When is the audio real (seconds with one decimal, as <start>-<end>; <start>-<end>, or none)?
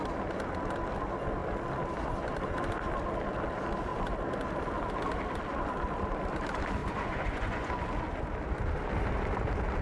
0.0-6.8; 7.7-9.8